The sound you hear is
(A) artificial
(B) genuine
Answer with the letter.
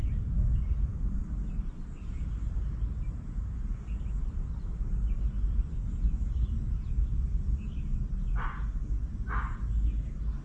B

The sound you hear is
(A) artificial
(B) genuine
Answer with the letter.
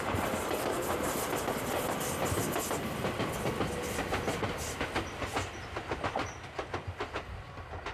B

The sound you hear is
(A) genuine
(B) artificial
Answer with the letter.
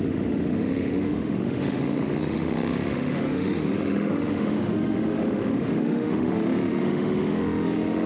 B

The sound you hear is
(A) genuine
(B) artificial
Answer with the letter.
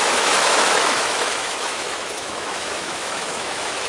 B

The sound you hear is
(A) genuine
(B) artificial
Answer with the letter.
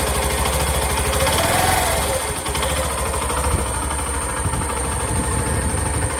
A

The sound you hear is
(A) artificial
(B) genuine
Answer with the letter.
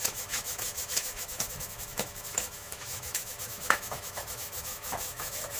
A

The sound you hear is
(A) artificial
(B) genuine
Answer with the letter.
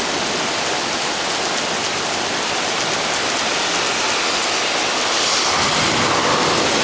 B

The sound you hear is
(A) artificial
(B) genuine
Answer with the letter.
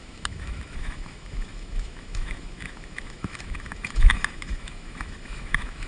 A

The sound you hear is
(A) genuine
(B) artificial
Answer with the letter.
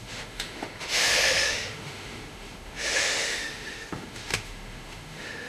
B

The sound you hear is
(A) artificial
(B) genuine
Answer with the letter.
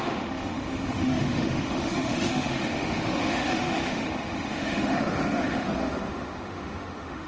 A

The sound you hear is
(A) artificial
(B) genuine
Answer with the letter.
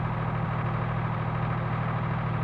B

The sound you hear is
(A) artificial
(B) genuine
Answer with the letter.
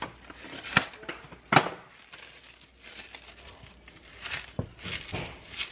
B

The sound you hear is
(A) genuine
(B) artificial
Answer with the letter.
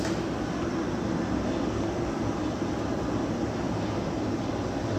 A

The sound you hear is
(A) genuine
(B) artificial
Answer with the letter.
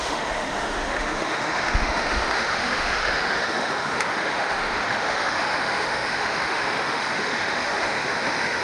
B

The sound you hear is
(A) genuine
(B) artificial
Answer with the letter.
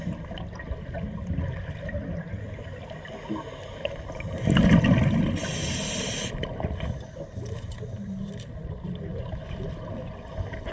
A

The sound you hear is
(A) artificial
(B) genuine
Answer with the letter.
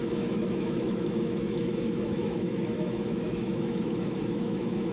A